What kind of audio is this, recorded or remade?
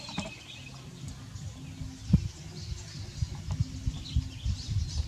recorded